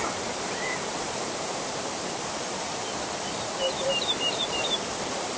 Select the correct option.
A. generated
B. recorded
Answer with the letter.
A